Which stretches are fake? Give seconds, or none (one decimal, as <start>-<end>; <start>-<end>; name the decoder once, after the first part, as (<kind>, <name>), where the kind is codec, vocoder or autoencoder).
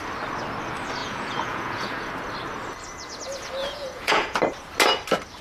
1.0-2.1 (vocoder, Vocos); 3.6-4.4